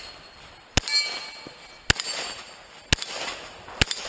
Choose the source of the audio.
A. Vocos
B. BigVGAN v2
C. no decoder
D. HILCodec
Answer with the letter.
C